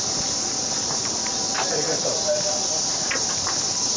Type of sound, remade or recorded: recorded